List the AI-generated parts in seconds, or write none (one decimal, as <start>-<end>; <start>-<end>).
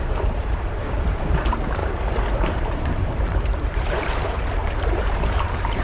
0.0-1.8; 2.4-5.8